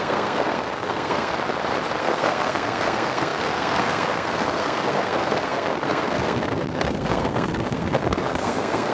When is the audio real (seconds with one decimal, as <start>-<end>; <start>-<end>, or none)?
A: 1.3-2.0